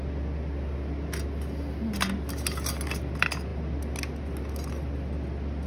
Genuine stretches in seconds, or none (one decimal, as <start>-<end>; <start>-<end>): 0.0-5.7